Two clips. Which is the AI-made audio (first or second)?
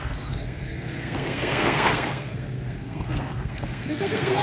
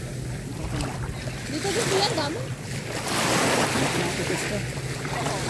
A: first